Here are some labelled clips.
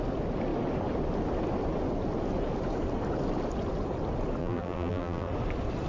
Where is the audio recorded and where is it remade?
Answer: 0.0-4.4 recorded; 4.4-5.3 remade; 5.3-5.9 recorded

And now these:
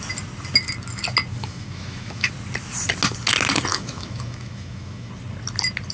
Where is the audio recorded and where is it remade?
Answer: 0.0-1.4 recorded; 1.4-2.3 remade; 2.3-3.7 recorded; 3.7-5.1 remade; 5.1-5.9 recorded

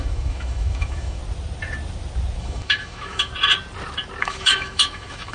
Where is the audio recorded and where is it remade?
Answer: 0.0-1.2 remade; 1.2-2.4 recorded; 2.4-3.3 remade; 3.3-4.2 recorded; 4.2-5.3 remade

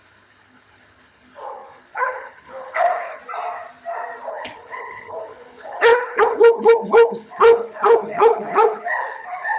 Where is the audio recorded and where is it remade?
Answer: 0.0-3.2 remade; 3.2-4.3 recorded; 4.3-9.6 remade